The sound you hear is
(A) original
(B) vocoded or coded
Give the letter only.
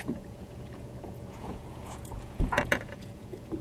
B